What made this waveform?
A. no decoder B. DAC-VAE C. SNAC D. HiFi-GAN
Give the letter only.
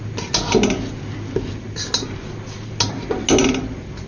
A